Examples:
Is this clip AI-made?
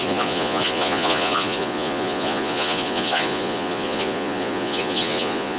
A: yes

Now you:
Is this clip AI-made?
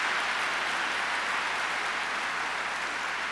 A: no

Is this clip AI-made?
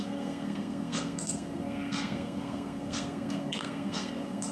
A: yes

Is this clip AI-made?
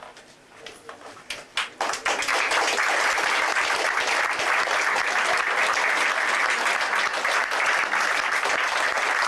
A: no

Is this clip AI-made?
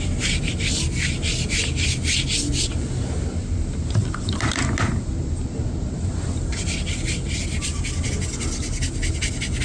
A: no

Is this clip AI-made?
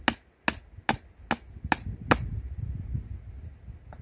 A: no